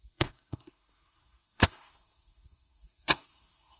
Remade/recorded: remade